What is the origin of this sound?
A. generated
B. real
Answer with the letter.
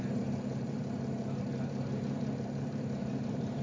A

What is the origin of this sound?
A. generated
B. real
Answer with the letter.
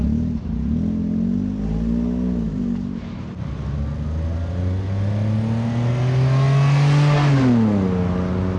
B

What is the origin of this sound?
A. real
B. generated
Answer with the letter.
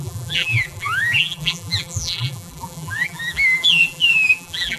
B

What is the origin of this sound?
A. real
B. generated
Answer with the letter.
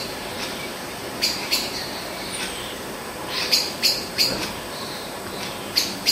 B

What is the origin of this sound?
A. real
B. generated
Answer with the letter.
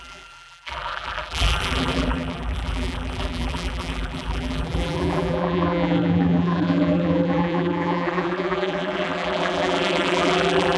B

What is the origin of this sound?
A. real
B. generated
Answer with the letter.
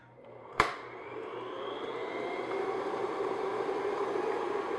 B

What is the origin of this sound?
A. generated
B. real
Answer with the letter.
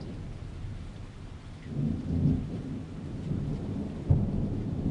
B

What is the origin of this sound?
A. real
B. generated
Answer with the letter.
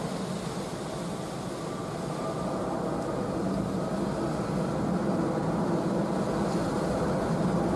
A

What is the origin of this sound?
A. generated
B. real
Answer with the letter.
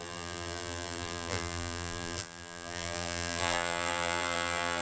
A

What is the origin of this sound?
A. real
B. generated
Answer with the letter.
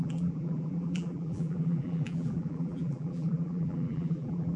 B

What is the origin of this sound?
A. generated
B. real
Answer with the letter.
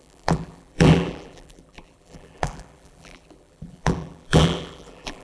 A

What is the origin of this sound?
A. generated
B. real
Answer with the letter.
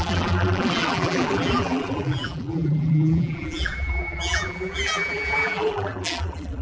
A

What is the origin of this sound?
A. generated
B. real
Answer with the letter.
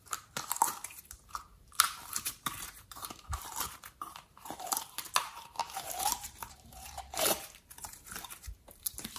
A